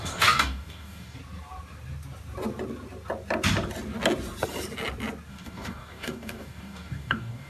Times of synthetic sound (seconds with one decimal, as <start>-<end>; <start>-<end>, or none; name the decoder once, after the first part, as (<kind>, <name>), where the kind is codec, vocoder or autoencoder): 0.0-1.2 (codec, DAC); 5.3-7.5